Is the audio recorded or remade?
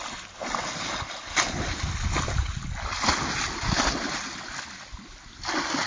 recorded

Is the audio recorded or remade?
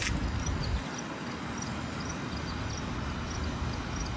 recorded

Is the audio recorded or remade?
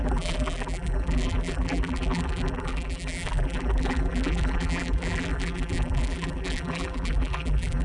remade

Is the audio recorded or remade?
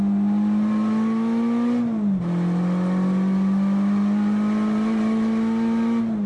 recorded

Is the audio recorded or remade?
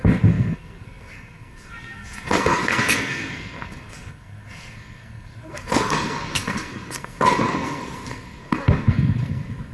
remade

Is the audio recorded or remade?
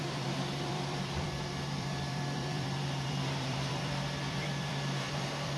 remade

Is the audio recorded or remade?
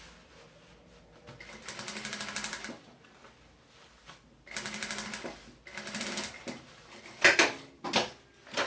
recorded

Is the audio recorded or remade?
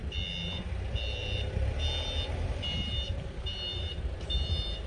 recorded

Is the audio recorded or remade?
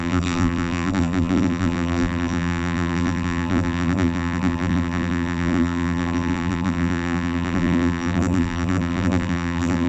remade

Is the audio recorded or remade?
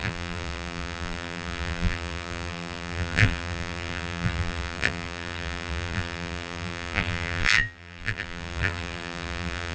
remade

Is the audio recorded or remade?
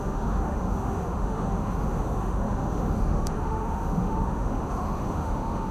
remade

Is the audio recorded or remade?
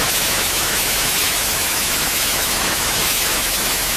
remade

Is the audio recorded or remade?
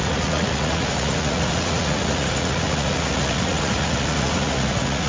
remade